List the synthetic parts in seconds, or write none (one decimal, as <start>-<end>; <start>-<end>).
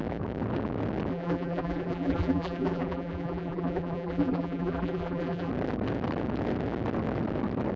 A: 1.1-5.5